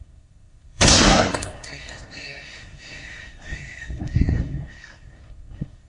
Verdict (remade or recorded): remade